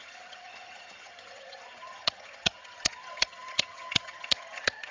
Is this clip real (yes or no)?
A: no